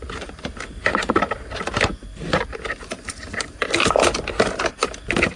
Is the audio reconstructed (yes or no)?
no